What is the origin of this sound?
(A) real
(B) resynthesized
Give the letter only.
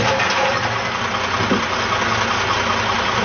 A